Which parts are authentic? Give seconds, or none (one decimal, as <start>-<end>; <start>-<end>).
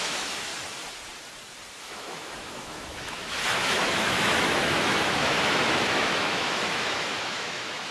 0.5-1.8